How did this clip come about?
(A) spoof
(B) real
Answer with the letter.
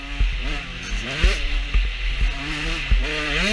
B